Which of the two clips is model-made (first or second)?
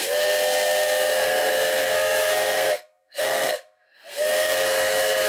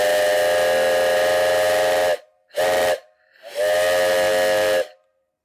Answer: first